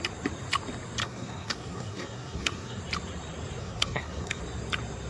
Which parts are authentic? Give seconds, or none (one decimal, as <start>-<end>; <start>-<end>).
0.0-1.0; 2.8-3.6; 4.4-5.1